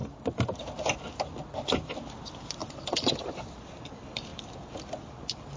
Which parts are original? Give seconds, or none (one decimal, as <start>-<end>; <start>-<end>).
0.0-2.6; 3.7-4.3; 5.1-5.6